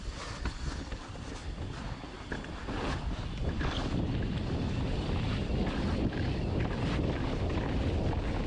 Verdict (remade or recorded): recorded